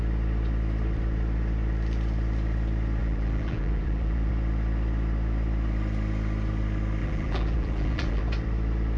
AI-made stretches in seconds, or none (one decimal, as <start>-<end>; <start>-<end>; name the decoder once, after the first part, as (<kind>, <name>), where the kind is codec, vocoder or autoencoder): 3.0-4.3 (vocoder, BigVGAN v2); 7.0-8.2